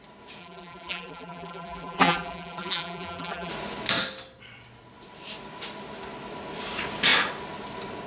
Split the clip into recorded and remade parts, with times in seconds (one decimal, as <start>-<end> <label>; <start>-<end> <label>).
0.0-0.4 recorded; 0.4-3.5 remade; 3.5-8.1 recorded